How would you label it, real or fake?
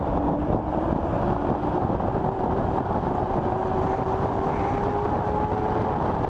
real